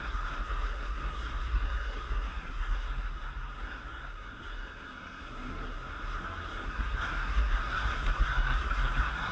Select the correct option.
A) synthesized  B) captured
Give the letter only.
A